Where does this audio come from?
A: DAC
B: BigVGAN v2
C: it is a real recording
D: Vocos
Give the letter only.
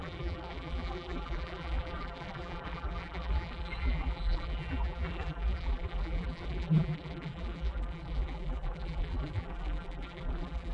B